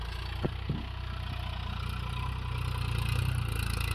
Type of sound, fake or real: real